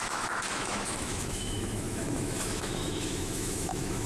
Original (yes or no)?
no